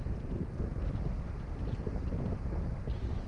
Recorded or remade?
recorded